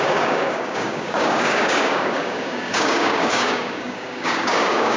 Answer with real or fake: fake